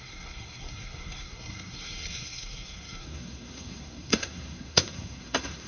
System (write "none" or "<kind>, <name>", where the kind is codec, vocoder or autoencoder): codec, SNAC